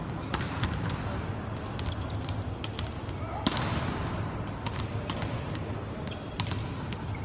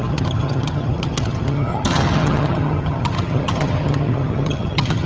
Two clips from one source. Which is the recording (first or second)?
first